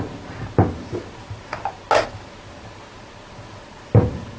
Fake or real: real